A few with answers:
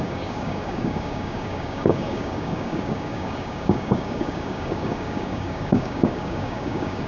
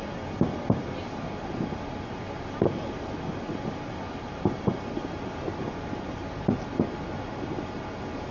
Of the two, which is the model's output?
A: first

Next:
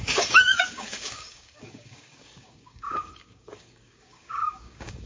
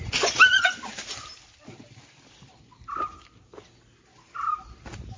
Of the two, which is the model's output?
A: first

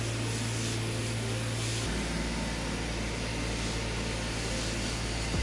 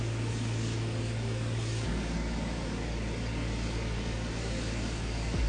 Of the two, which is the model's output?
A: second